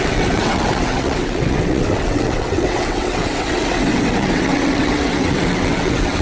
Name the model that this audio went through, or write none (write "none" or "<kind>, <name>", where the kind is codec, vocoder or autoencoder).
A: vocoder, WaveNeXt